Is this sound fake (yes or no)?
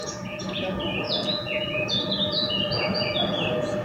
yes